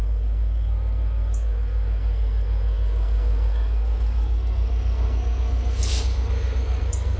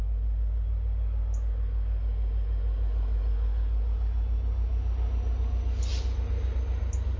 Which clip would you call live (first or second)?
second